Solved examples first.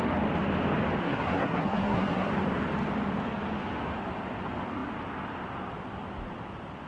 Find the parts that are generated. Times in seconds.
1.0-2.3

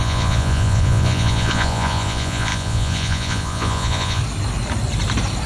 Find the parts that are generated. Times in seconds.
0.0-4.2

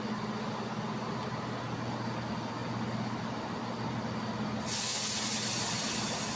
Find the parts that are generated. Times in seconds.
none

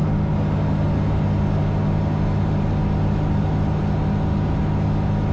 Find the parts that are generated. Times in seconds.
none